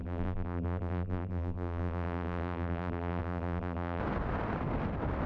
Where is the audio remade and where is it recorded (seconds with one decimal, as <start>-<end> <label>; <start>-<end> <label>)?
0.0-4.0 remade; 4.0-5.3 recorded